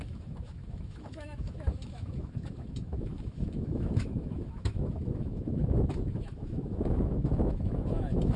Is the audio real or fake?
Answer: fake